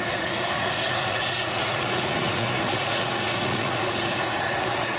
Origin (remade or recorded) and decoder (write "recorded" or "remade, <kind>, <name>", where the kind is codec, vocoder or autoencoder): remade, vocoder, Vocos